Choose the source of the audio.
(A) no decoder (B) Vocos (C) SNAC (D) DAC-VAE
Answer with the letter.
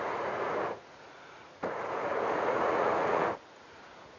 B